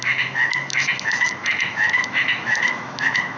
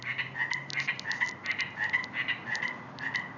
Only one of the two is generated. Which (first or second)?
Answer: first